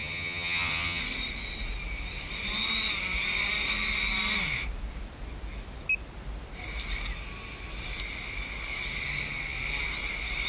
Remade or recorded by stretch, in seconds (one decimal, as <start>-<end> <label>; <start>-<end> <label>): 0.0-1.0 remade; 1.0-10.5 recorded